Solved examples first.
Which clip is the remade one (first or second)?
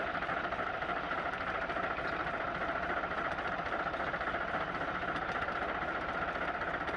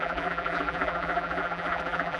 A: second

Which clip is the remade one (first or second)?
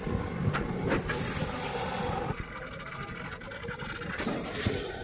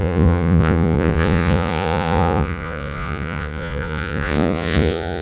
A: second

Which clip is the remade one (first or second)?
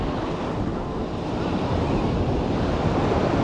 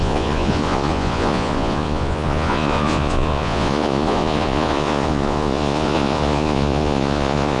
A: second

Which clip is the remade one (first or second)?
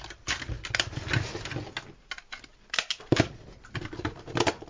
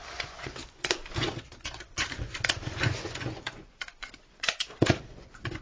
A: second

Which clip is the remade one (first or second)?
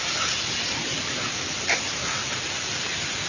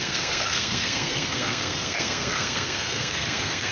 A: second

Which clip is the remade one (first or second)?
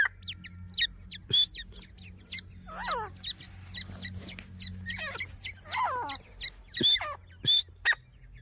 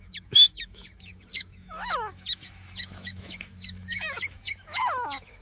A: second